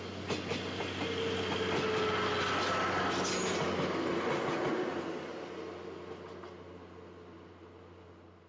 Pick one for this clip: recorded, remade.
recorded